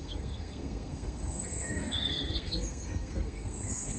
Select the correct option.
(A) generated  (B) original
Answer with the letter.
A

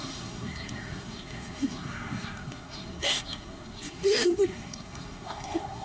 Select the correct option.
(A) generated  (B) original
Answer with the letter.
A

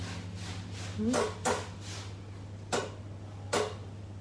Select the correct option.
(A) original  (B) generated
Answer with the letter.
A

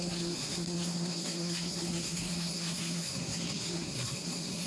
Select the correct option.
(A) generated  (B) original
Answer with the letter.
A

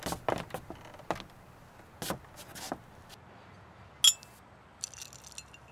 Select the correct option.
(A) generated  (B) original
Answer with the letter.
B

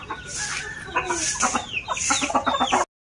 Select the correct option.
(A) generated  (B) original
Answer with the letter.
B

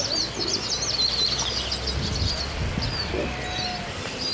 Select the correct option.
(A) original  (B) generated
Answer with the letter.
A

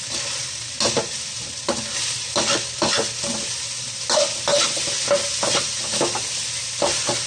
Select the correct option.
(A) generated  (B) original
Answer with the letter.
B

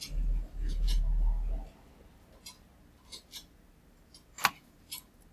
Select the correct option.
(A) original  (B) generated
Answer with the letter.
A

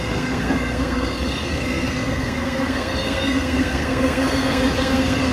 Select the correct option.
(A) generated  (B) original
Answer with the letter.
A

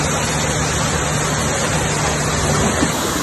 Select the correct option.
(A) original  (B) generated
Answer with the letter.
A